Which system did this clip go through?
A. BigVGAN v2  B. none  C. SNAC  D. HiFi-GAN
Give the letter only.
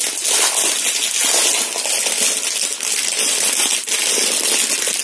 B